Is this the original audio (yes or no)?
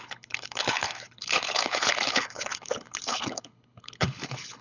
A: no